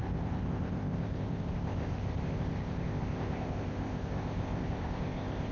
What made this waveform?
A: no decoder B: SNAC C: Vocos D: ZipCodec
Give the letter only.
D